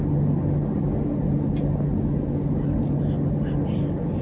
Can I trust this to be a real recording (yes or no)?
yes